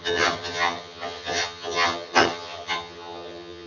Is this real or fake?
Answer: fake